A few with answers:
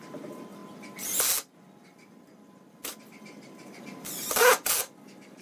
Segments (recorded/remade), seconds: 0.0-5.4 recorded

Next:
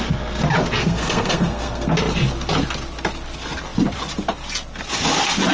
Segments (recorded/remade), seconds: 0.0-0.8 recorded; 0.8-1.9 remade; 1.9-5.5 recorded

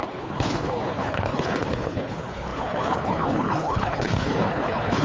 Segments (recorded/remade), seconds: 0.0-5.0 remade

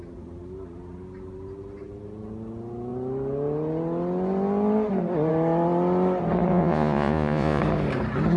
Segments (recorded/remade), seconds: 0.0-6.5 recorded; 6.5-7.6 remade; 7.6-8.4 recorded

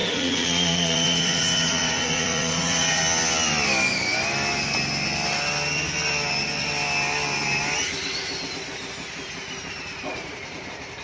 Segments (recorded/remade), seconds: 0.0-3.0 remade; 3.0-9.9 recorded; 9.9-10.6 remade; 10.6-11.0 recorded